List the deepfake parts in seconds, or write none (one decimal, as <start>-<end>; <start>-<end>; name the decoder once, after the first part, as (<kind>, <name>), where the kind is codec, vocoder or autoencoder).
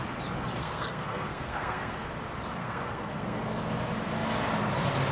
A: 0.6-2.1 (codec, SNAC); 2.6-3.4